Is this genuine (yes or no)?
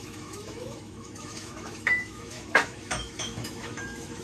no